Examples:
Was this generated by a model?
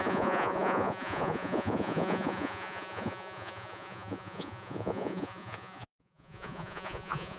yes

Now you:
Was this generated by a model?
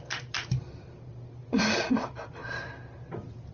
no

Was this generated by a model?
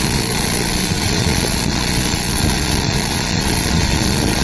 yes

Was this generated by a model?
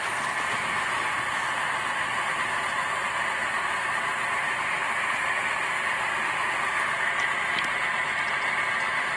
no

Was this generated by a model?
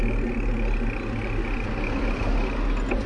no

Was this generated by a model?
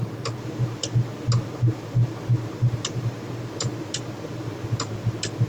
no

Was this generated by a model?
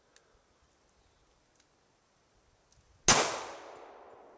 no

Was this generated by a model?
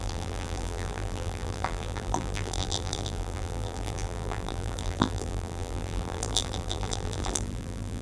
yes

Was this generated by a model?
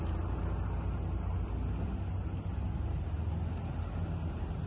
no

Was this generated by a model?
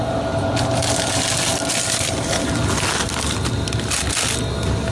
no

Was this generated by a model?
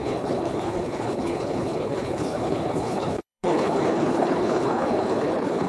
yes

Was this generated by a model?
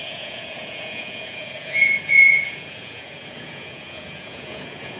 yes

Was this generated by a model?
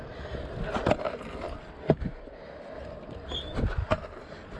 no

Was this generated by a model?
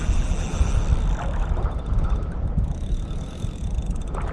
no